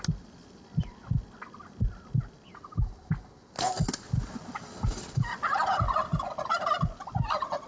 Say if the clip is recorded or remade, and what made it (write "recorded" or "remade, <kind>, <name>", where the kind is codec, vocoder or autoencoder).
recorded